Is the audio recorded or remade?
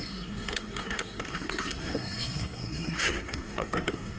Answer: remade